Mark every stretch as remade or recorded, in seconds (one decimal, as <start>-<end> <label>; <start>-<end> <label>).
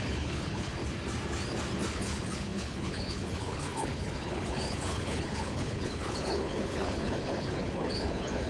0.0-0.8 remade; 0.8-1.9 recorded; 1.9-8.5 remade